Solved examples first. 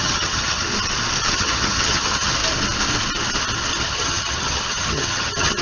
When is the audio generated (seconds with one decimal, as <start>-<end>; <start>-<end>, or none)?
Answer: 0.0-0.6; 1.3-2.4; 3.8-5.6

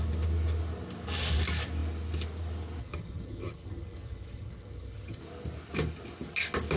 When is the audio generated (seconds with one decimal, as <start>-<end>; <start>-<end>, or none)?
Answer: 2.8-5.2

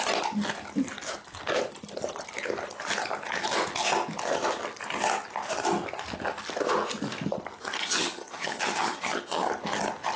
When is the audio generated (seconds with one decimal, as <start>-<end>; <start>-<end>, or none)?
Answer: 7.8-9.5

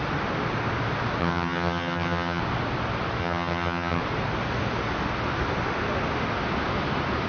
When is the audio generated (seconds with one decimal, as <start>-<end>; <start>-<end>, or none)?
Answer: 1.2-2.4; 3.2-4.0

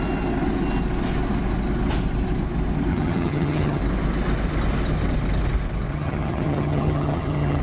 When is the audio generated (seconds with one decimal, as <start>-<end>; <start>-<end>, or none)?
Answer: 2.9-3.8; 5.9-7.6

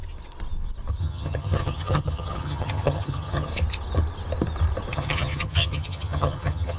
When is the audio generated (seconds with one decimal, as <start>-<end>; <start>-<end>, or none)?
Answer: 1.0-3.5; 4.9-6.8

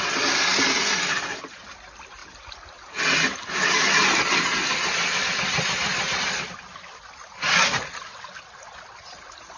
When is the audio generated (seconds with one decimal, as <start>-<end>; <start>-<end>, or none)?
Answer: none